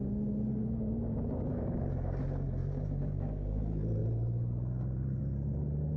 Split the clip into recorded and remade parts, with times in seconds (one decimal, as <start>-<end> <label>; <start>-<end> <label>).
0.0-0.6 recorded; 0.6-2.2 remade; 2.2-2.6 recorded; 2.6-3.6 remade; 3.6-6.0 recorded